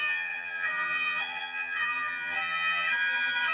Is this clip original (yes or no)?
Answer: no